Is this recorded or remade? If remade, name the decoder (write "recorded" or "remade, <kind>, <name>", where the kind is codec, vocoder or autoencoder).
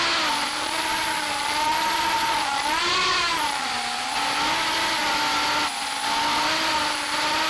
recorded